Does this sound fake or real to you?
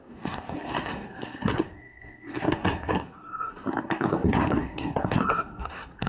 fake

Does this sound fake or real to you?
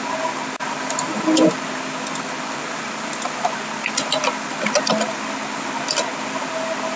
real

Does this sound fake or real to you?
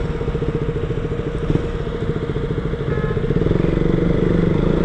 real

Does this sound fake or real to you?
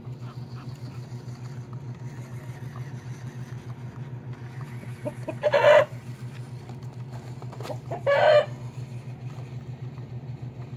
real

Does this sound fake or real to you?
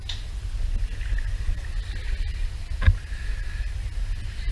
real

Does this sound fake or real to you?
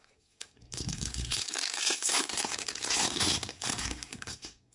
fake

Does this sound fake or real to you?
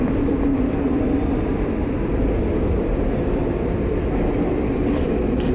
real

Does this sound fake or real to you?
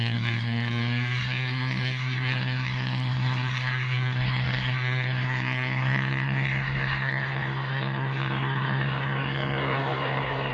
fake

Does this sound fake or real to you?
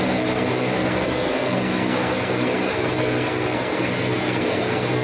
fake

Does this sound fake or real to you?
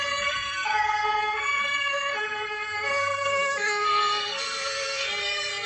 fake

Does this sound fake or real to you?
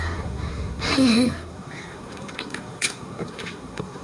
fake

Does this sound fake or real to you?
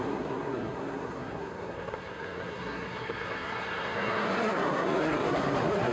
fake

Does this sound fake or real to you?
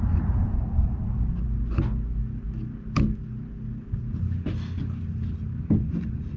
real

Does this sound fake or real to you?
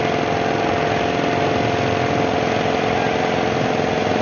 real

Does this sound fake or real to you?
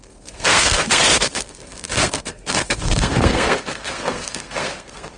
fake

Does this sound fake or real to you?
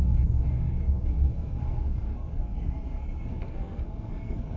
fake